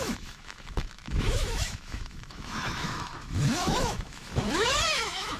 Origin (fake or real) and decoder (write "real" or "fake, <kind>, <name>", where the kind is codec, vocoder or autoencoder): fake, autoencoder, DAC-VAE